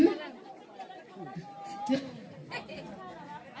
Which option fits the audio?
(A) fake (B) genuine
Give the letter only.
B